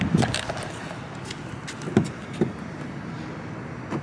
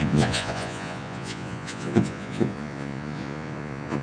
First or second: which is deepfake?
second